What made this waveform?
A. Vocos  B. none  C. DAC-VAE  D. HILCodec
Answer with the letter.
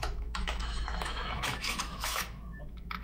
C